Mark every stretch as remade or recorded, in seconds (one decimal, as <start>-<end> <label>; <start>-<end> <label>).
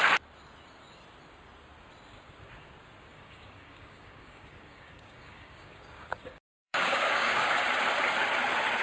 0.0-3.1 recorded; 3.1-7.5 remade; 7.5-8.8 recorded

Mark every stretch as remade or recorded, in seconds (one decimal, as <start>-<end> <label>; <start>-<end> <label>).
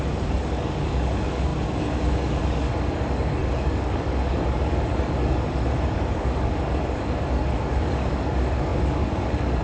0.0-9.6 remade